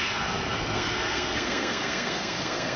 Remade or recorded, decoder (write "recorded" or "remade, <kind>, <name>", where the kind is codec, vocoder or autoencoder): remade, codec, SNAC